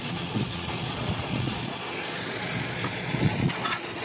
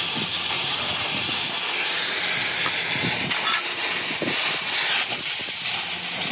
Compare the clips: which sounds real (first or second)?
second